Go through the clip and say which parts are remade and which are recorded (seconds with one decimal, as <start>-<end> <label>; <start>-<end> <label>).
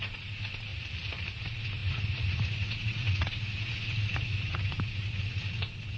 0.0-0.7 remade; 0.7-1.4 recorded; 1.4-6.0 remade